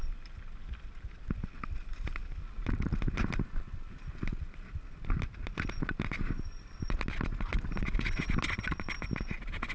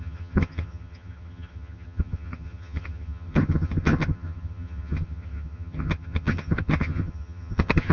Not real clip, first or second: second